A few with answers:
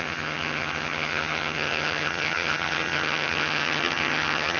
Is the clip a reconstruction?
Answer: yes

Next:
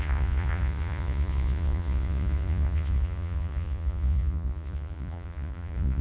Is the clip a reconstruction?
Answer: yes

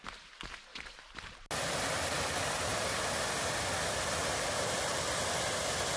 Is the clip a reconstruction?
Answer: no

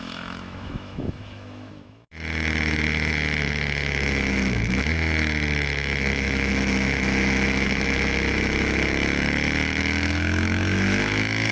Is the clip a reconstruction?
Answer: yes